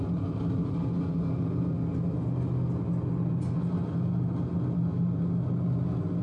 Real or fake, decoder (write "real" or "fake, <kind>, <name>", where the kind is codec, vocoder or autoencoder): real